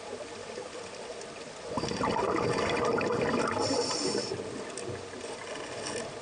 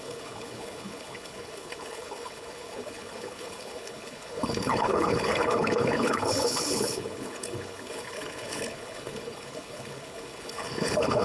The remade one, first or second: second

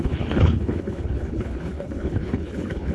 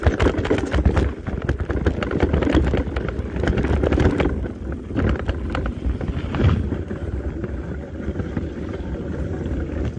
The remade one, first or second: first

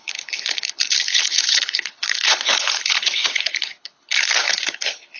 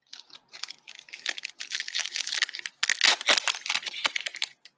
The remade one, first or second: first